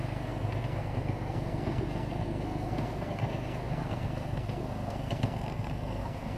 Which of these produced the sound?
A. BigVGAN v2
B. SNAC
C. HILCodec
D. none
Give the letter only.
B